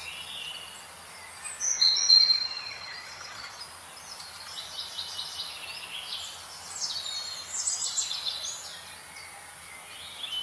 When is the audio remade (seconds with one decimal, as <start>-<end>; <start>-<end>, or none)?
1.7-3.6